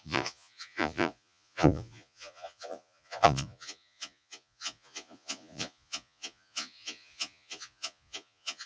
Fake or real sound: fake